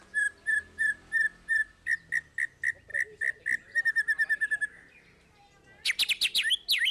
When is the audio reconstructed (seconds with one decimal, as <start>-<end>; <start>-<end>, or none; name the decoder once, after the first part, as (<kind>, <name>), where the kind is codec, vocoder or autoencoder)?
none